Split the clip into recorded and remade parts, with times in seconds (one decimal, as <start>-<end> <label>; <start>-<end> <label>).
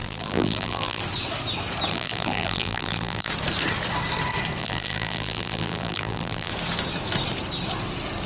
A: 0.0-1.0 remade; 1.0-1.9 recorded; 1.9-3.3 remade; 3.3-4.6 recorded; 4.6-6.5 remade; 6.5-8.3 recorded